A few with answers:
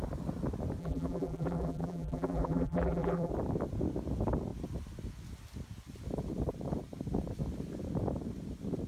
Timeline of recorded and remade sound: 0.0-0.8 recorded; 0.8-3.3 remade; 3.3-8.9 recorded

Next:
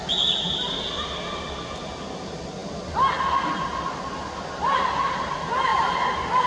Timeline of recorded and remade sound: 0.0-5.7 recorded; 5.7-6.5 remade

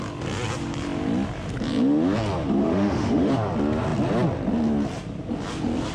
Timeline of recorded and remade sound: 0.0-2.6 recorded; 2.6-3.3 remade; 3.3-5.9 recorded

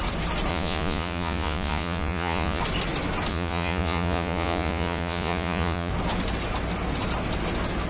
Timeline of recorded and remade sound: 0.0-0.5 recorded; 0.5-2.6 remade; 2.6-3.3 recorded; 3.3-5.9 remade; 5.9-7.9 recorded

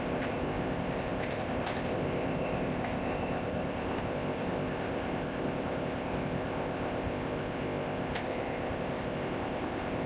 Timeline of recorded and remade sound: 0.0-10.1 remade

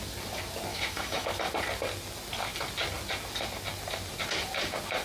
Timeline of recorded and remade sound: 0.0-0.7 recorded; 0.7-1.3 remade; 1.3-5.0 recorded

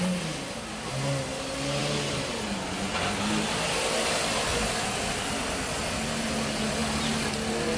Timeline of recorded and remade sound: 0.0-7.8 recorded

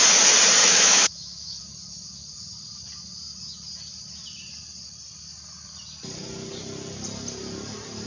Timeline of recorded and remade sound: 0.0-0.6 recorded; 0.6-1.6 remade; 1.6-8.1 recorded